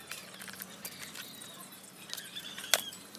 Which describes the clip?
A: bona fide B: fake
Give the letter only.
B